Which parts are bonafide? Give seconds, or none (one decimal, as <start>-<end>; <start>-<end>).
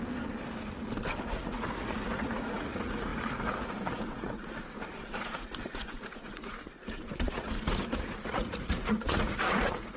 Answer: 0.0-1.3